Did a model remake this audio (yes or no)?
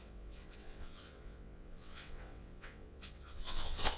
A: yes